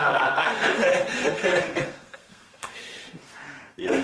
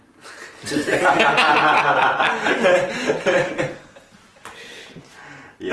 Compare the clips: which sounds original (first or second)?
second